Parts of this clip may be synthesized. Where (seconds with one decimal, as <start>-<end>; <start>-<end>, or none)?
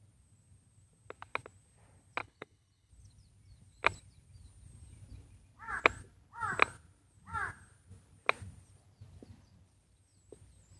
2.2-2.9